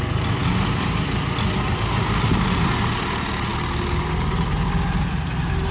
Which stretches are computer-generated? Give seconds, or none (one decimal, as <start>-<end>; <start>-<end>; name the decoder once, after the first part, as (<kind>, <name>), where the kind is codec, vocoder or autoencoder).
none